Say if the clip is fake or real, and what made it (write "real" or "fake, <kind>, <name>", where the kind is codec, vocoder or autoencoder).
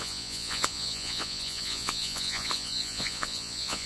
fake, vocoder, Vocos